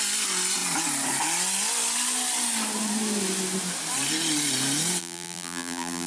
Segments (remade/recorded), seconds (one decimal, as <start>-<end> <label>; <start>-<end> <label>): 0.0-5.0 recorded; 5.0-6.1 remade